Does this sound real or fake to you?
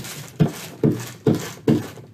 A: real